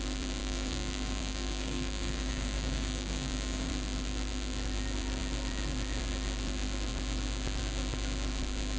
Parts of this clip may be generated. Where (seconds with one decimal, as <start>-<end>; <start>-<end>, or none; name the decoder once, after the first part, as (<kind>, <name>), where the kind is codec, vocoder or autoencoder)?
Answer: 0.4-3.7 (codec, DAC)